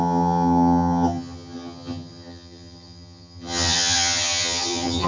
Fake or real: fake